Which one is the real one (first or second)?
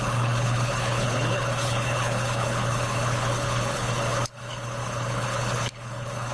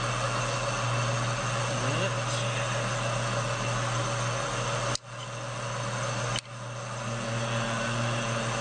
second